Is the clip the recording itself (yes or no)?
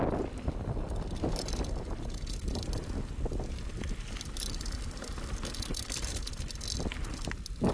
yes